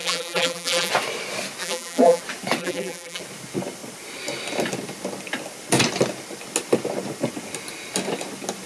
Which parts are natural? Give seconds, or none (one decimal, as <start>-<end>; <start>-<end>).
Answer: 0.9-1.6; 2.2-2.6; 3.2-8.7